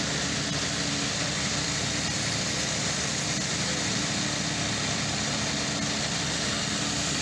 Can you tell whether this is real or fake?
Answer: real